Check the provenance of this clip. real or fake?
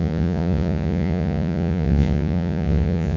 fake